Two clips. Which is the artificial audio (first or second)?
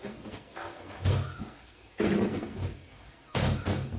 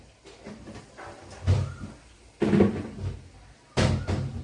first